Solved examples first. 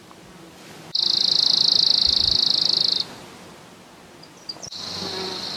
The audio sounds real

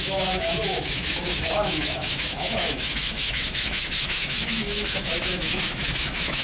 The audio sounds fake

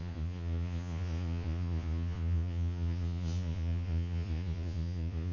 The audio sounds fake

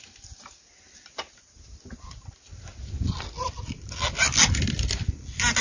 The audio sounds real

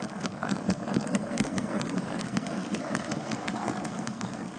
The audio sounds fake